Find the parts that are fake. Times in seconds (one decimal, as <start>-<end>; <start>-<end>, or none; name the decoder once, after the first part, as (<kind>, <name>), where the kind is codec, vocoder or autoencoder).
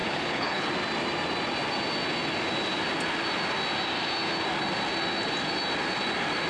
0.0-0.7 (codec, HILCodec)